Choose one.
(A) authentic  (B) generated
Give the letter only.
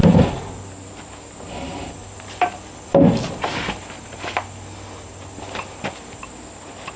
A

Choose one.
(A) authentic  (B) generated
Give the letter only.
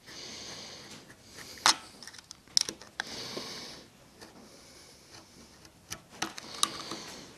A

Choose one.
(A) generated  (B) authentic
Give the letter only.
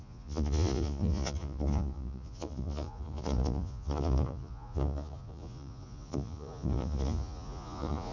A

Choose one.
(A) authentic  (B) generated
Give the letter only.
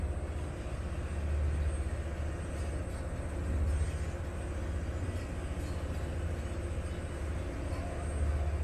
A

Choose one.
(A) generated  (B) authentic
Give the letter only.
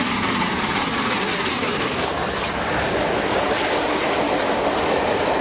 B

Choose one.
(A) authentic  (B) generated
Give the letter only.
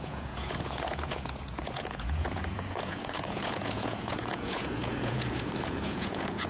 B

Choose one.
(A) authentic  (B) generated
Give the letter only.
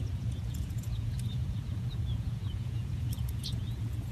B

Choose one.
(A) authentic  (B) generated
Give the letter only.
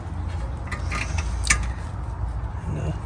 A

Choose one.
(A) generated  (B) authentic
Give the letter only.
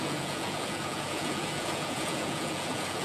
A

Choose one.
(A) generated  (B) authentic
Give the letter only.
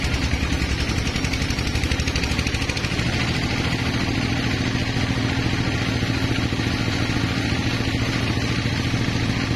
B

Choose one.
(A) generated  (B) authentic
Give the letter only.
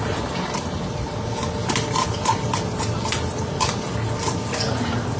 B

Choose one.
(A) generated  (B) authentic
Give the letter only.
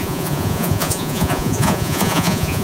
A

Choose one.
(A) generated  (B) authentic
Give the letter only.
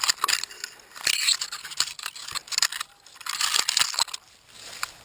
B